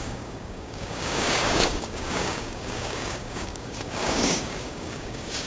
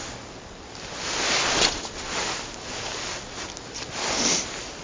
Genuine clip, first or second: second